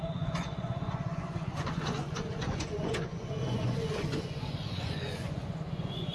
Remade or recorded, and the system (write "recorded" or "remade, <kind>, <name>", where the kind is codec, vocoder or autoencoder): remade, vocoder, Vocos